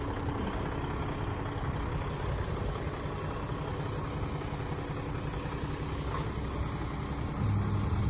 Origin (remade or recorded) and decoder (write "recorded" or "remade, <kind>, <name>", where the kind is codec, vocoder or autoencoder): recorded